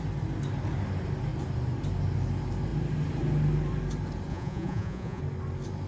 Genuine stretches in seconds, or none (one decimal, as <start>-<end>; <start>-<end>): 0.0-4.3; 5.2-5.9